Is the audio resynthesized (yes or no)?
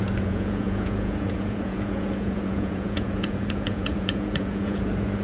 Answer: yes